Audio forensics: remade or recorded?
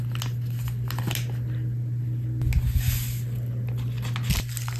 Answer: recorded